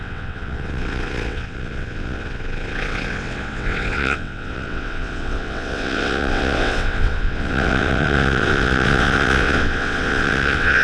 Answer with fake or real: fake